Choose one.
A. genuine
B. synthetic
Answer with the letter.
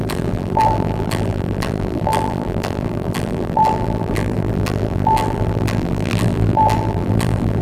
B